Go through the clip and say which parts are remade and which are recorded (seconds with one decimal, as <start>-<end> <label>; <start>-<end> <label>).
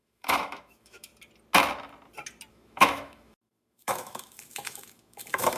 0.0-1.1 remade; 1.1-2.5 recorded; 2.5-5.6 remade